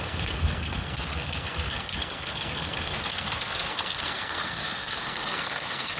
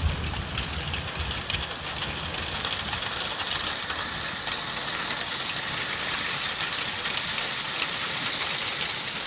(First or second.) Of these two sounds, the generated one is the first